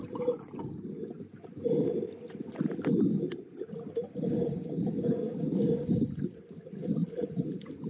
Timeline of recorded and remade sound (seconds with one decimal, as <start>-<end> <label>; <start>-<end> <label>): 0.0-7.9 recorded